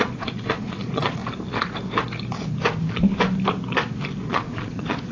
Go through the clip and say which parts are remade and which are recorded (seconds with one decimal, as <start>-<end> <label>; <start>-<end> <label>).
0.0-1.2 remade; 1.2-4.3 recorded; 4.3-5.1 remade